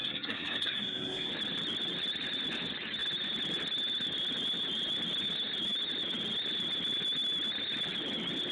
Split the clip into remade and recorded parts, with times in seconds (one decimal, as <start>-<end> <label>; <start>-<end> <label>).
0.0-1.3 remade; 1.3-8.5 recorded